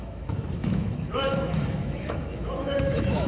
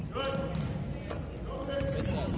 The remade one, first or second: first